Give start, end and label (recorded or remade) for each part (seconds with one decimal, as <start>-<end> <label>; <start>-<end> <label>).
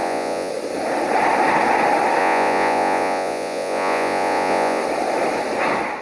0.0-0.5 remade; 0.5-2.2 recorded; 2.2-4.8 remade; 4.8-6.0 recorded